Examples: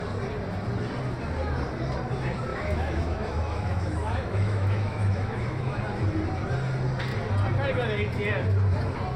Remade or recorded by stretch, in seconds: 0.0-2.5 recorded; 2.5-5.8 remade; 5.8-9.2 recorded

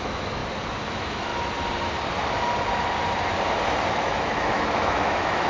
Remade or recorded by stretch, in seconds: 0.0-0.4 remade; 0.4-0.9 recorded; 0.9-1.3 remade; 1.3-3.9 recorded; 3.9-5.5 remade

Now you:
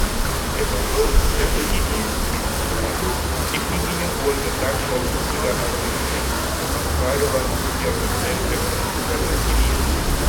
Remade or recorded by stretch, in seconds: 0.0-0.8 recorded; 0.8-1.7 remade; 1.7-5.8 recorded; 5.8-6.3 remade; 6.3-10.3 recorded